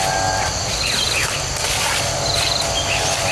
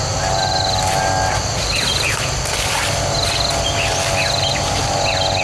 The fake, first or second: first